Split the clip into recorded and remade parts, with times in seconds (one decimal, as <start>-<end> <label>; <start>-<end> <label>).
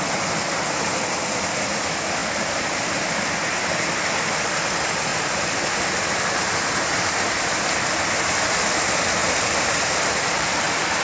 0.0-2.2 recorded; 2.2-3.8 remade; 3.8-5.1 recorded; 5.1-5.9 remade; 5.9-9.2 recorded; 9.2-11.0 remade